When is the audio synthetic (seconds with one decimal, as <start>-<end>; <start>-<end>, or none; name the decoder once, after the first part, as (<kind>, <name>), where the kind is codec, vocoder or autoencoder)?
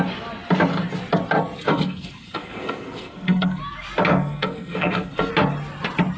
1.7-3.6 (codec, SNAC); 4.1-5.3